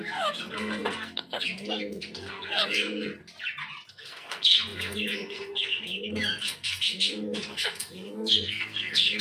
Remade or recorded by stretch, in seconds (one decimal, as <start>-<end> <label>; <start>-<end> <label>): 0.0-3.1 remade; 3.1-3.9 recorded; 3.9-9.2 remade